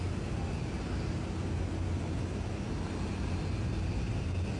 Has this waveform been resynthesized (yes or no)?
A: no